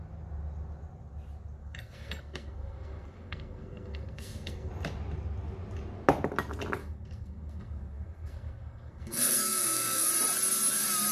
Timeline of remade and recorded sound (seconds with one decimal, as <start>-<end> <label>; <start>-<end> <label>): 0.0-1.6 recorded; 1.6-4.7 remade; 4.7-6.8 recorded; 6.8-10.1 remade; 10.1-11.1 recorded